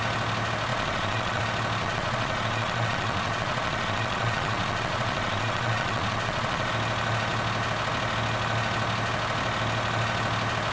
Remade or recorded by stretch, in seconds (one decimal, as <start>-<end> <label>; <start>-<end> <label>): 0.0-0.7 recorded; 0.7-1.4 remade; 1.4-1.8 recorded; 1.8-6.7 remade; 6.7-10.7 recorded